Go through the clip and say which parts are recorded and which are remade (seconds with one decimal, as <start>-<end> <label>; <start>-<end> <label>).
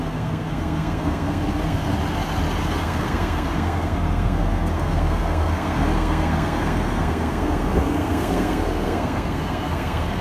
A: 0.0-1.9 remade; 1.9-2.6 recorded; 2.6-10.2 remade